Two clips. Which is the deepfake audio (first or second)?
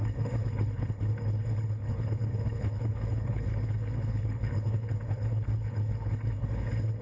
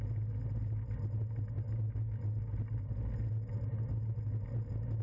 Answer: first